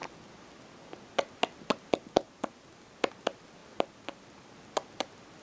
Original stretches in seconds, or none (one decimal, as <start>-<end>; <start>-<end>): 0.0-5.4